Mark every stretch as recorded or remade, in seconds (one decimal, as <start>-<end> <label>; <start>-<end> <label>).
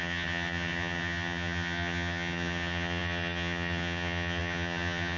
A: 0.0-5.2 remade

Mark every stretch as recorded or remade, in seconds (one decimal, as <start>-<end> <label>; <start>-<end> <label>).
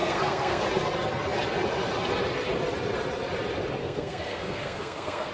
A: 0.0-0.6 remade; 0.6-3.8 recorded; 3.8-5.3 remade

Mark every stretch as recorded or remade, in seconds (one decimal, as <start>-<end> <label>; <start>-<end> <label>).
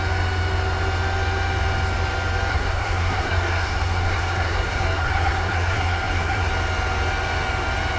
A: 0.0-2.5 recorded; 2.5-6.5 remade; 6.5-8.0 recorded